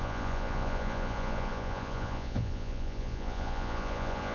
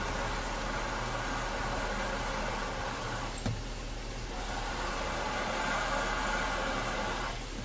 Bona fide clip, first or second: second